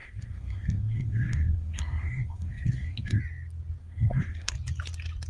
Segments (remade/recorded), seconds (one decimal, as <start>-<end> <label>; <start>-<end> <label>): 0.0-3.2 remade; 3.2-3.8 recorded; 3.8-4.5 remade; 4.5-5.3 recorded